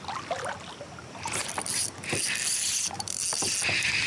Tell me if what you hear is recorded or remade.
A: recorded